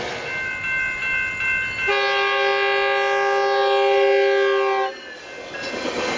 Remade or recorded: recorded